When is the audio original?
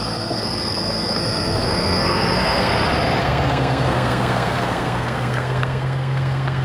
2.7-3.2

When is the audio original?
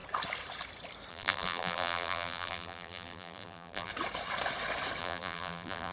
0.0-1.1; 3.9-5.0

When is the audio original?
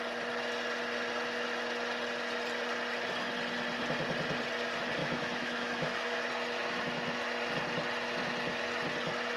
0.0-5.0; 6.3-9.4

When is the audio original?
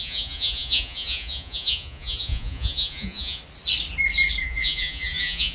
3.4-4.4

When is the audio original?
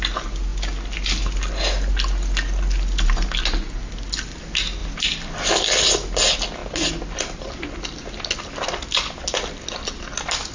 0.0-10.5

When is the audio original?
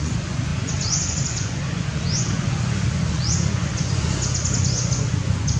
none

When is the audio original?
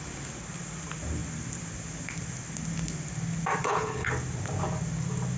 0.0-3.6; 4.1-5.4